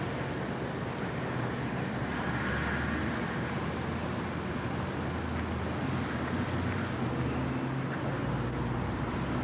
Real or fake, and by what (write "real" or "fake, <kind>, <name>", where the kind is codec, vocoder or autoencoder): real